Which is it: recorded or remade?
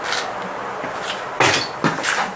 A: recorded